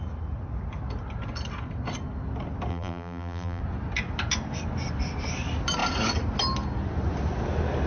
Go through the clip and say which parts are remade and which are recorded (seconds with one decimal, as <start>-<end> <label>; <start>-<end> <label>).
0.0-2.7 recorded; 2.7-3.6 remade; 3.6-7.9 recorded

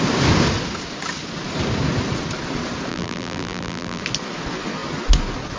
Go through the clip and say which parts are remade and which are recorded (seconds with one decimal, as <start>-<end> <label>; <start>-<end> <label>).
0.0-2.9 recorded; 2.9-4.0 remade; 4.0-5.6 recorded